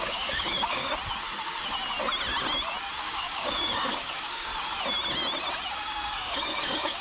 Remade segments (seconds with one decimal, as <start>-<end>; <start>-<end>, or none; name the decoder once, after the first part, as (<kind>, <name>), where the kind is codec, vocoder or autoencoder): 0.0-0.9 (codec, DAC); 3.0-4.5; 5.7-7.0